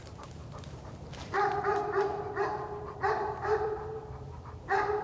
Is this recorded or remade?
remade